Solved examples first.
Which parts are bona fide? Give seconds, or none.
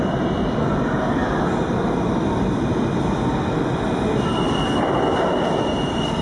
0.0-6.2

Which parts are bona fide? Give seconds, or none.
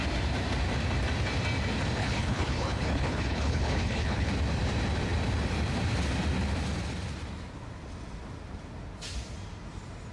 0.0-2.0; 4.3-10.1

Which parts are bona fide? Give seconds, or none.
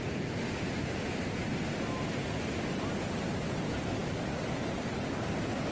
0.0-5.7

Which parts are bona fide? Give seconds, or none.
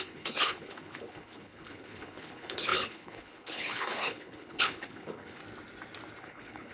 5.4-6.2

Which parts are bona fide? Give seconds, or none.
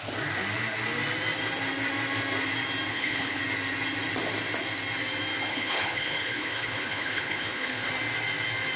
0.0-2.9; 3.4-5.5; 7.9-8.8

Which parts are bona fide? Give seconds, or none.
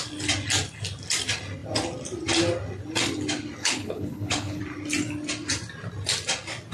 0.0-3.6; 4.6-6.7